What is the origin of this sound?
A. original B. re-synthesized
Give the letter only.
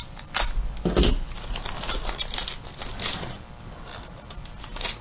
A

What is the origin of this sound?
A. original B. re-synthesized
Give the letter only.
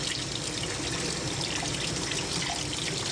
A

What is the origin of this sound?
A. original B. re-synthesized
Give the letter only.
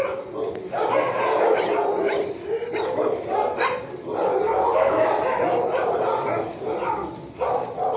A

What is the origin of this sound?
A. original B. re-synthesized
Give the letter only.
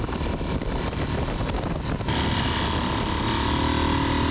A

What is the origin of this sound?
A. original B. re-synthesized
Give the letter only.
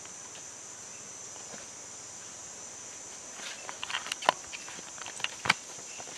B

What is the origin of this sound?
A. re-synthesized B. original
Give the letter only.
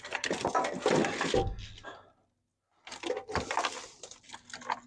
B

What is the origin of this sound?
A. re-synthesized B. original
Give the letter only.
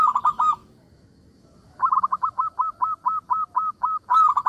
A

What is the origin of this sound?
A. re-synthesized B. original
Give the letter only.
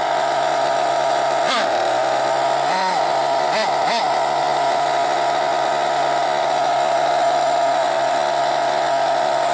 B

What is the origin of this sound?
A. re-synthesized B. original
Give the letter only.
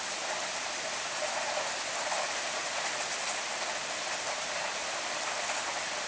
B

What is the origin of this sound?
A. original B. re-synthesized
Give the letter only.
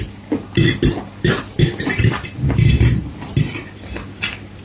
A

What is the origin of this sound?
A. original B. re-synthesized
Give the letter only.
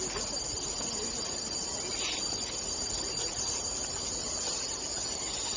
A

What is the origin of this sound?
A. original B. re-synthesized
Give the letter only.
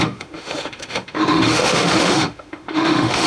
B